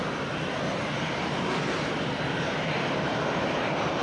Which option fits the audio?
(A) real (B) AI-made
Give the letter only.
A